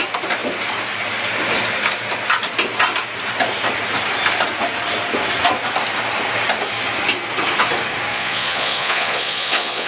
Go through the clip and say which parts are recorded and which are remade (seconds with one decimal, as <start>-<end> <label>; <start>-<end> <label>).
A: 0.0-8.1 recorded; 8.1-9.9 remade